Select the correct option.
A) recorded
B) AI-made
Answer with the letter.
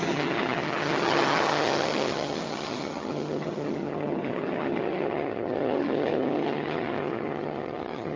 B